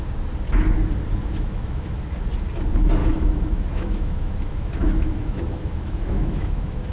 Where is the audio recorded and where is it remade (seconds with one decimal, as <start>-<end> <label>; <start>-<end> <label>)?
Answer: 0.0-1.2 recorded; 1.2-2.0 remade; 2.0-3.0 recorded; 3.0-6.9 remade